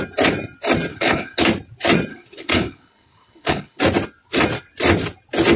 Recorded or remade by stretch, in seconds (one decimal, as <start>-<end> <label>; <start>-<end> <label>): 0.0-0.9 recorded; 0.9-1.4 remade; 1.4-2.1 recorded; 2.1-3.8 remade; 3.8-5.6 recorded